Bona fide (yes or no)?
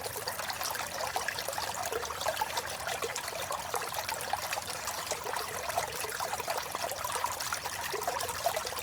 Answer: yes